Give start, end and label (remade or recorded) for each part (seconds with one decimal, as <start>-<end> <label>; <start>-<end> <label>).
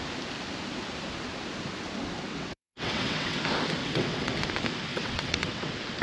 0.0-2.3 recorded; 2.3-3.4 remade; 3.4-3.8 recorded; 3.8-4.3 remade; 4.3-4.9 recorded; 4.9-5.6 remade; 5.6-6.0 recorded